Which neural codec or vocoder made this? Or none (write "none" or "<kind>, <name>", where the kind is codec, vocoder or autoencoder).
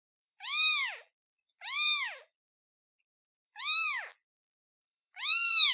vocoder, BigVGAN v2